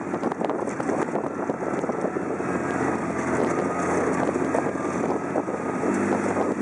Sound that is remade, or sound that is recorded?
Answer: recorded